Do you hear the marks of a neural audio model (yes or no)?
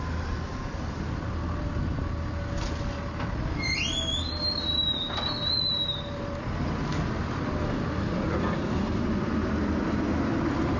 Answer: no